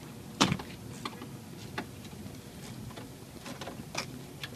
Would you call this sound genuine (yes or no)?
yes